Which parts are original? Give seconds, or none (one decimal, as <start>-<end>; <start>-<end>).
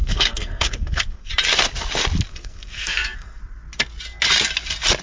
1.3-2.3; 3.4-5.0